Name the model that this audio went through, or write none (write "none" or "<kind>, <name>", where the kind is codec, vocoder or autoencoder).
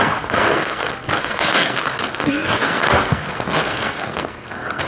codec, SNAC